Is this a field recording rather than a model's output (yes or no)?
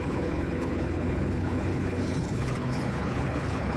no